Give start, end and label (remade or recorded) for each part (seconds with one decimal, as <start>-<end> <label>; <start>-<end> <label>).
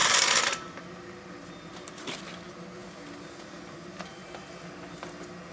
0.0-1.9 remade; 1.9-2.8 recorded; 2.8-4.7 remade; 4.7-5.5 recorded